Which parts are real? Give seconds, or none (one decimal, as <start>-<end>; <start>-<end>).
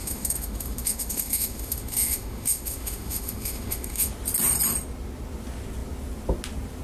4.1-6.8